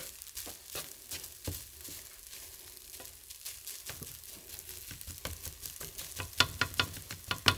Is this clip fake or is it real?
real